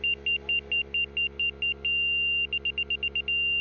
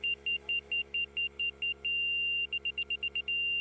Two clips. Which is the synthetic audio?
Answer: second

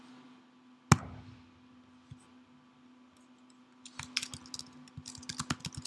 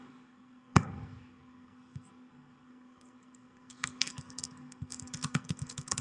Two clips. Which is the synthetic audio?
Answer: second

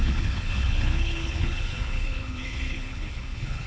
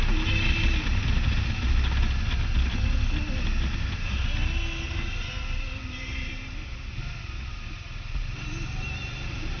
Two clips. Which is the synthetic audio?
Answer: first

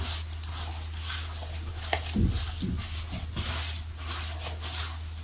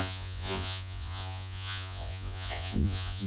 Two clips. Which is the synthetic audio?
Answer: second